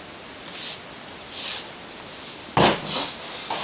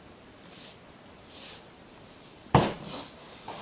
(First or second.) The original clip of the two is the first